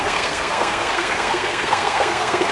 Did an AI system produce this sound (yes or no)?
yes